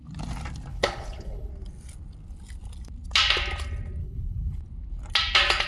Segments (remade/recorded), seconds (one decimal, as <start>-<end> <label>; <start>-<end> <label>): 0.0-0.7 recorded; 0.7-1.5 remade; 1.5-4.0 recorded; 4.0-4.6 remade; 4.6-5.7 recorded